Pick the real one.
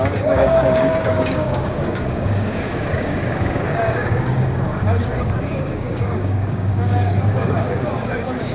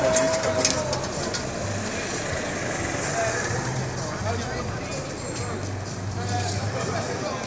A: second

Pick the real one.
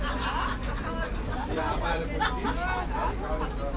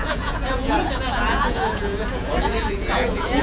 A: first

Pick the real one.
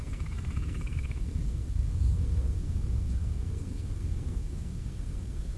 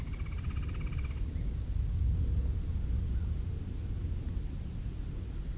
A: second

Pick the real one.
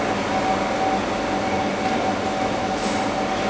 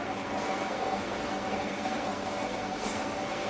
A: first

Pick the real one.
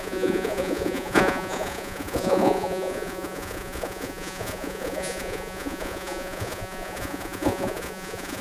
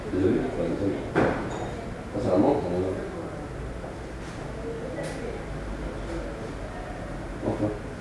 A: second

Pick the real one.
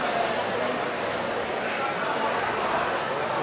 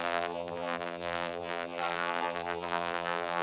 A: first